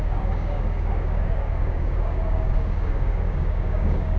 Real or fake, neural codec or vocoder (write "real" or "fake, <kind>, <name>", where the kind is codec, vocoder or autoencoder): fake, codec, DAC